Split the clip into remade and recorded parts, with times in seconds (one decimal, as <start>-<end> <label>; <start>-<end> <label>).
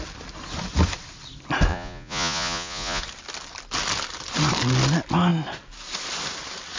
0.0-1.7 recorded; 1.7-3.0 remade; 3.0-6.8 recorded